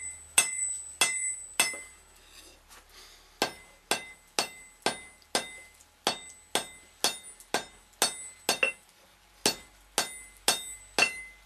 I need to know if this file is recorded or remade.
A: recorded